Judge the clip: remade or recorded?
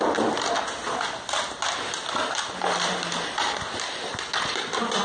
recorded